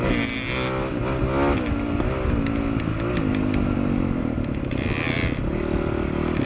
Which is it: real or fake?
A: real